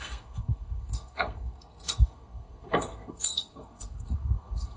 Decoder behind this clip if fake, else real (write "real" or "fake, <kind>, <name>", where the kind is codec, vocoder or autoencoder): fake, codec, SNAC